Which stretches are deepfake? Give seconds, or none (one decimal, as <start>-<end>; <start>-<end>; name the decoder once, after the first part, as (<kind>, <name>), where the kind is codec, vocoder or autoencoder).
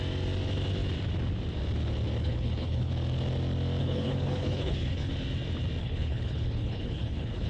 2.2-2.9 (codec, HILCodec); 3.8-5.1; 5.8-7.5